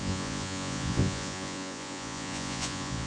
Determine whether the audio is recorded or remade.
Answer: remade